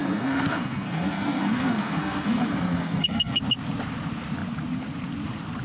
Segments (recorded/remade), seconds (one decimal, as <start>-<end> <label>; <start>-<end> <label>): 0.0-3.4 remade; 3.4-5.6 recorded